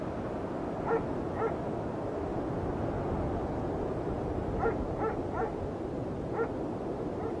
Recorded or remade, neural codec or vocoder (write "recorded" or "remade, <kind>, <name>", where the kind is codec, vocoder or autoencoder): recorded